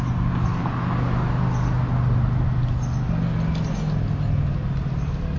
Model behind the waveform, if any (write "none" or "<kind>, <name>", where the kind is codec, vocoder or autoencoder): none